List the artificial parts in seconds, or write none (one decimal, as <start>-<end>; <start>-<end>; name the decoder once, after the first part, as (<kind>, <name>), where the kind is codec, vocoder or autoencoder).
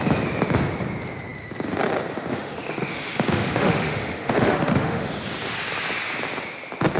2.3-5.1 (autoencoder, DAC-VAE)